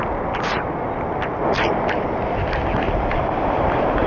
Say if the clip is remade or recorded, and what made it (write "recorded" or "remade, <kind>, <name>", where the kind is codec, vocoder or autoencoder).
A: recorded